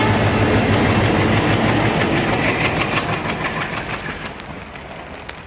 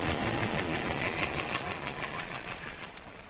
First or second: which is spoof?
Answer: second